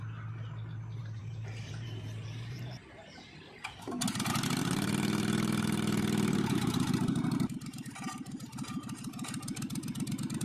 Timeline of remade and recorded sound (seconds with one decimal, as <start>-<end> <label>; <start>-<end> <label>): 0.0-1.0 recorded; 1.0-3.5 remade; 3.5-4.6 recorded; 4.6-8.5 remade; 8.5-10.4 recorded

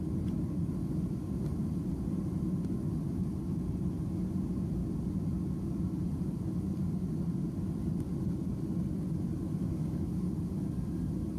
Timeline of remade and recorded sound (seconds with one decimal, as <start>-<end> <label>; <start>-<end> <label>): 0.0-9.6 recorded; 9.6-10.3 remade; 10.3-11.4 recorded